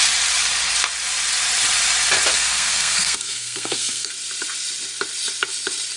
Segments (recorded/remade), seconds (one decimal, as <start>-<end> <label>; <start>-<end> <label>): 0.0-2.3 recorded; 2.3-4.1 remade; 4.1-6.0 recorded

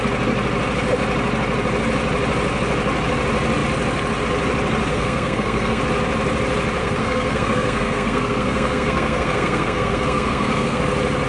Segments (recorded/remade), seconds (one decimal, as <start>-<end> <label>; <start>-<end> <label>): 0.0-4.9 recorded; 4.9-5.8 remade; 5.8-6.8 recorded; 6.8-10.8 remade; 10.8-11.3 recorded

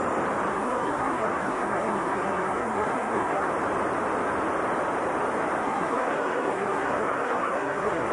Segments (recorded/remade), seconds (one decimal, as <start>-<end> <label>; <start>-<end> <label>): 0.0-0.5 recorded; 0.5-3.5 remade; 3.5-5.6 recorded; 5.6-8.1 remade

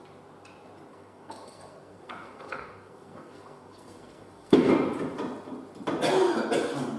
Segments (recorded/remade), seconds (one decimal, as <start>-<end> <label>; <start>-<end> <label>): 0.0-0.9 recorded; 0.9-4.7 remade; 4.7-7.0 recorded

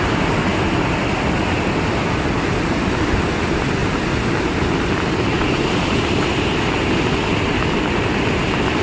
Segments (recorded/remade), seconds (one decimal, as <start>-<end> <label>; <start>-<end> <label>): 0.0-8.8 recorded

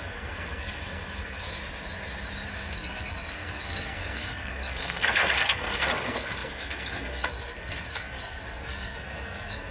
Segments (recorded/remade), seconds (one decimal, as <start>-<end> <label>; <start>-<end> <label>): 0.0-1.6 remade; 1.6-2.5 recorded; 2.5-9.7 remade